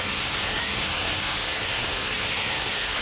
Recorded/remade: remade